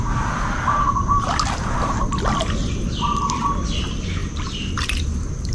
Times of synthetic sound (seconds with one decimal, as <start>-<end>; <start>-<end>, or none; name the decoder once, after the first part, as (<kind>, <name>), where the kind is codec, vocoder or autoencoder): none